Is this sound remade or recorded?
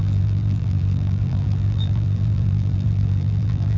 remade